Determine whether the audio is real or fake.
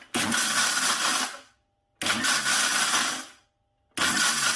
real